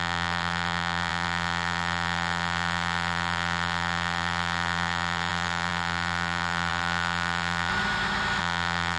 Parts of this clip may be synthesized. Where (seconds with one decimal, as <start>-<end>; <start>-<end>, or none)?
0.0-7.7; 8.4-9.0